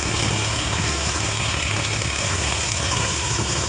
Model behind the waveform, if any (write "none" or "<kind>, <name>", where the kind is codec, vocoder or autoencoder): codec, SNAC